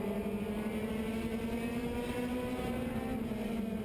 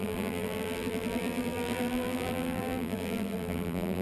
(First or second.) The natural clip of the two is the first